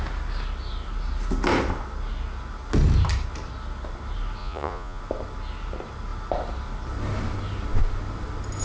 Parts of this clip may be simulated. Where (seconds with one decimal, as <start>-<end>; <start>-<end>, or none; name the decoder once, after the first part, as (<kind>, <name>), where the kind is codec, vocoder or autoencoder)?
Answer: 4.4-5.0 (vocoder, Vocos)